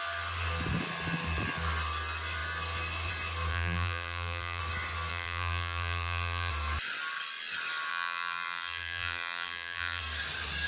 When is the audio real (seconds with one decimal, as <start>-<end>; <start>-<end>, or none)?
0.0-3.5; 4.6-5.1; 6.5-7.9; 10.0-10.7